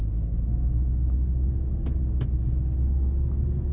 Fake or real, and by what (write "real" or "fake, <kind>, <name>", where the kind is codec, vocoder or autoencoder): real